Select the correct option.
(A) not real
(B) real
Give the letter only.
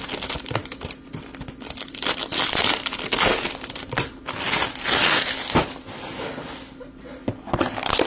B